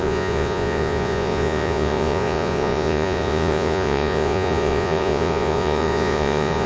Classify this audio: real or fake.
fake